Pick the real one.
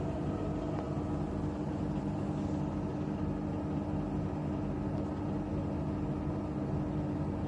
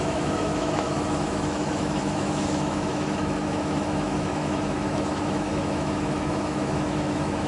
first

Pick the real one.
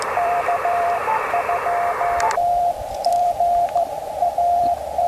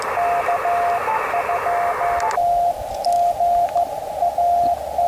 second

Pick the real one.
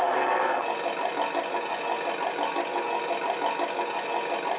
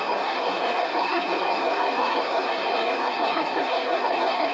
first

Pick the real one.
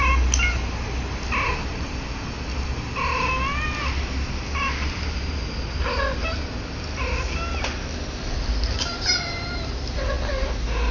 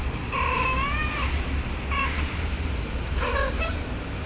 first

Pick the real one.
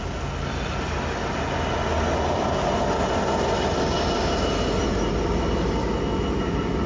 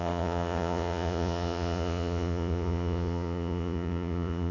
first